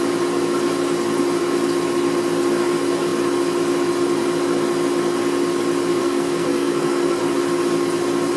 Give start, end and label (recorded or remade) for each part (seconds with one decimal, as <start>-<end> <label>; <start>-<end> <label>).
0.0-6.0 recorded; 6.0-7.2 remade; 7.2-8.4 recorded